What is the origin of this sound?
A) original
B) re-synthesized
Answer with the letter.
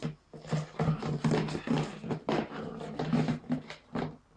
A